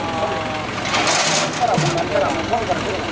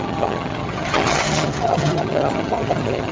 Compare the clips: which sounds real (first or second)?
first